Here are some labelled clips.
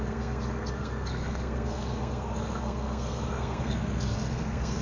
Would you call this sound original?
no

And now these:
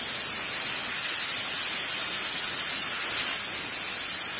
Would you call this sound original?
yes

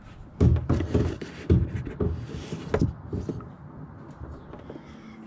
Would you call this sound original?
yes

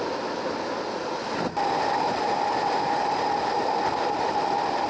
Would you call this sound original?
yes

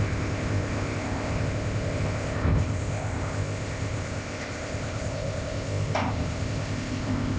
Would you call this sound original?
no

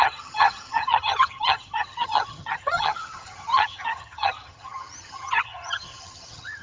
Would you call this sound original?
no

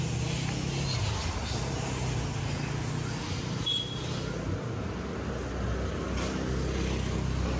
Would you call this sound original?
yes